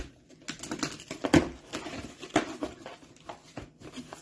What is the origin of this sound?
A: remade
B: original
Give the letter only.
B